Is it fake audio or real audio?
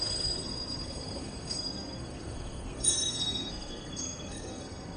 fake